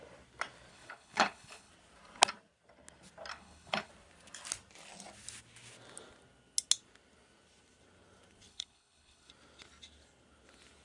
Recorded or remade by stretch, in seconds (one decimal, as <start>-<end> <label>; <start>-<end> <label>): 0.0-0.7 recorded; 0.7-1.7 remade; 1.7-3.3 recorded; 3.3-3.9 remade; 3.9-8.5 recorded; 8.5-9.3 remade; 9.3-10.8 recorded

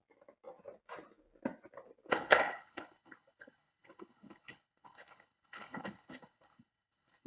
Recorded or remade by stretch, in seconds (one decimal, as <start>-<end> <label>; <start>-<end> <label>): 0.0-2.1 recorded; 2.1-7.3 remade

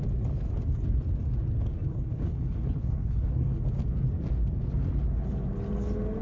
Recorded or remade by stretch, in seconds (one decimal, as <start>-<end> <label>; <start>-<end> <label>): 0.0-1.9 recorded; 1.9-3.6 remade; 3.6-6.2 recorded